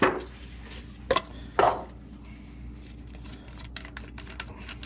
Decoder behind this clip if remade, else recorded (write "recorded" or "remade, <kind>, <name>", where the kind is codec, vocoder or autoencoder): recorded